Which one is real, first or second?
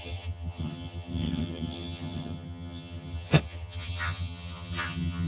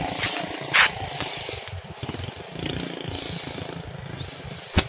second